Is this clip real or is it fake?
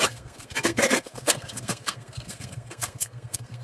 fake